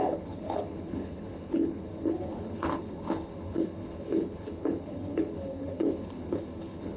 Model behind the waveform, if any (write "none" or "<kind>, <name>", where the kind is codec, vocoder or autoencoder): codec, HILCodec